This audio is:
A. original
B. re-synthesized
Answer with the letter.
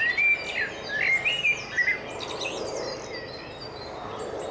A